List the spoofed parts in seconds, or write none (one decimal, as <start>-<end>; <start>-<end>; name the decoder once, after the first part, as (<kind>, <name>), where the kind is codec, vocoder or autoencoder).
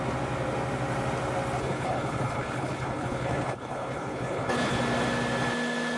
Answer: 1.6-4.8 (codec, HILCodec)